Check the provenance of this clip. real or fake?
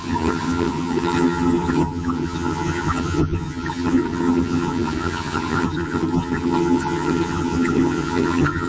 fake